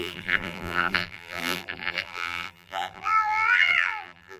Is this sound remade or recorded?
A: remade